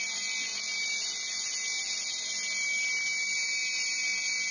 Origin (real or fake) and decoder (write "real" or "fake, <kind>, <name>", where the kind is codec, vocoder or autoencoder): real